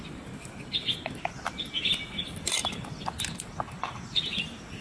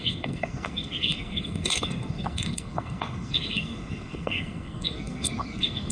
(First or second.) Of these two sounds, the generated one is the second